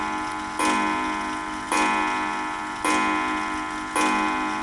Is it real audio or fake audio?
real